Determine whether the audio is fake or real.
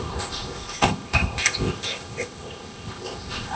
fake